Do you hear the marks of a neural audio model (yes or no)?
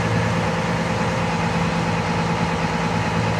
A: no